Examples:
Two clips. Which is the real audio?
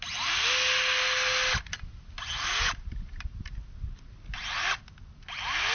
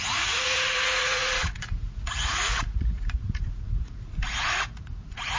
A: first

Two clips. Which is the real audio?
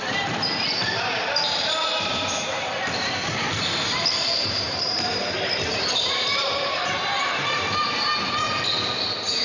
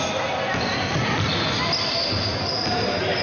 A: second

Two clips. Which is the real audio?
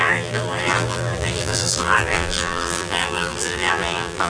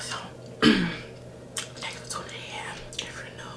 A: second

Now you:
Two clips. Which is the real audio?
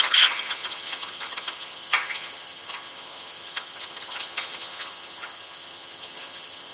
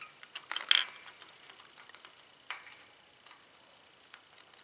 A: second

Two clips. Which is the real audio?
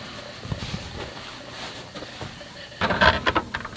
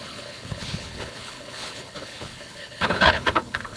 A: first